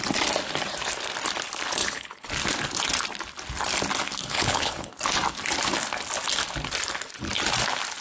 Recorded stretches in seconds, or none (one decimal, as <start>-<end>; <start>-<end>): 0.0-1.8; 2.3-4.2; 4.9-8.0